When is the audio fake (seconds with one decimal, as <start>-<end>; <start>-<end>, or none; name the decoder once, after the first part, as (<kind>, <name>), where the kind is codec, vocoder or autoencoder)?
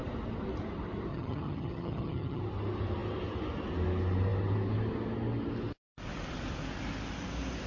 1.1-2.4 (vocoder, HiFi-GAN)